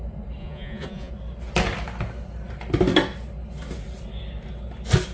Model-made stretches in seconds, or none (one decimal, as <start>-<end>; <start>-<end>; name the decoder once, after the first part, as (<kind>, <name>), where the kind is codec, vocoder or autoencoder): 0.4-1.1 (vocoder, Vocos)